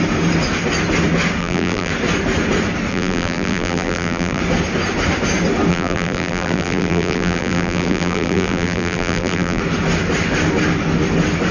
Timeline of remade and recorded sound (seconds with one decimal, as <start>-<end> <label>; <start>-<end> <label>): 0.0-1.4 recorded; 1.4-1.9 remade; 1.9-2.9 recorded; 2.9-4.4 remade; 4.4-5.7 recorded; 5.7-9.6 remade; 9.6-11.5 recorded